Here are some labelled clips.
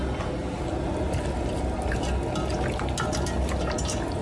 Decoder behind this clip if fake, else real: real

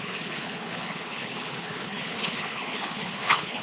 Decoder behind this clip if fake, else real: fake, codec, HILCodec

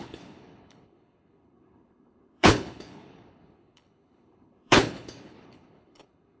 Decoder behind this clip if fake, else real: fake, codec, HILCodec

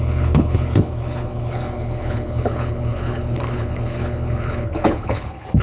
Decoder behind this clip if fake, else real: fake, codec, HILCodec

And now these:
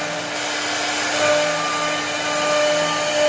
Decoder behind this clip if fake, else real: real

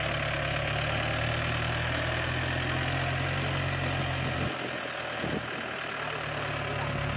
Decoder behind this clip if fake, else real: real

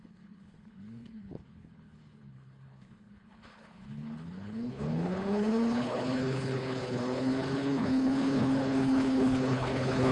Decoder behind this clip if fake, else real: fake, codec, HILCodec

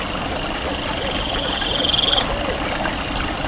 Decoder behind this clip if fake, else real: real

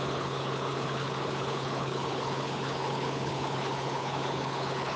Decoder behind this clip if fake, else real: fake, codec, HILCodec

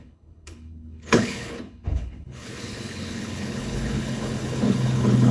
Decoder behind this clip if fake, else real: fake, codec, HILCodec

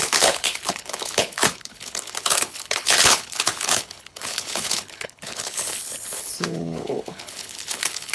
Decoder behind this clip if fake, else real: fake, codec, HILCodec